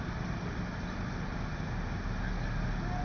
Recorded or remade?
recorded